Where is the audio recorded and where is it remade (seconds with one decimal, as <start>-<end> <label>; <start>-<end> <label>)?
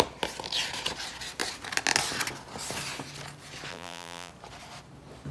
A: 0.0-3.7 recorded; 3.7-4.3 remade; 4.3-5.3 recorded